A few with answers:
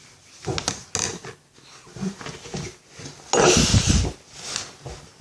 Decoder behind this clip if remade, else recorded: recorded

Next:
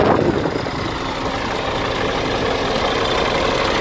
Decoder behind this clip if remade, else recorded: recorded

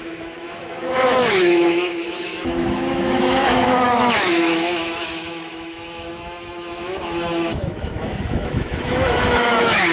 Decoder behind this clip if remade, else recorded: remade, autoencoder, DAC-VAE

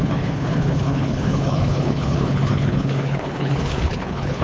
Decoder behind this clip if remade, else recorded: remade, codec, HILCodec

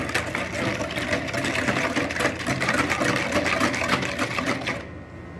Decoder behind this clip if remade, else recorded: recorded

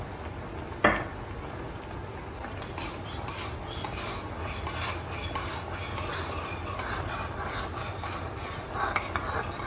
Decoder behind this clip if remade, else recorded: recorded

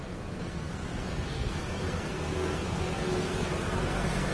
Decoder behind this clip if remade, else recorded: remade, codec, SNAC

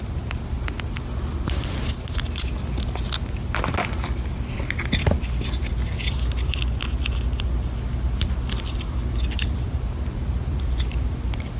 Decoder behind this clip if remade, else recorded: recorded